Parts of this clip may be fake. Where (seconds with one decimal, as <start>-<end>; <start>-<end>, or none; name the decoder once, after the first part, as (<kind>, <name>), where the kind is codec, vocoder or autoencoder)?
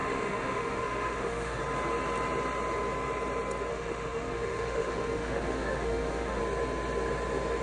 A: 0.0-1.6 (autoencoder, DAC-VAE); 3.7-6.4